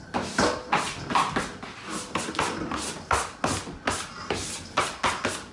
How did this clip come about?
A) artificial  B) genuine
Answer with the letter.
B